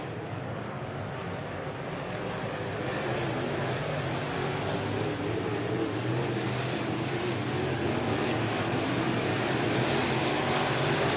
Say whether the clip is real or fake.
real